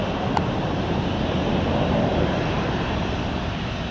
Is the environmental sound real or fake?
fake